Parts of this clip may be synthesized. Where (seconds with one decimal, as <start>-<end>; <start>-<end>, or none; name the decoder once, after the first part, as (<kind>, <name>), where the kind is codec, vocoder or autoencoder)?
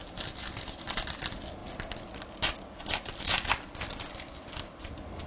none